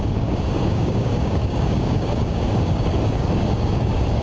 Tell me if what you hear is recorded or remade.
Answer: remade